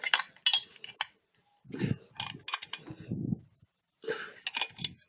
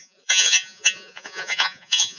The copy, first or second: second